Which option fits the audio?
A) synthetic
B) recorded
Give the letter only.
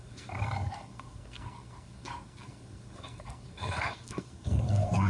A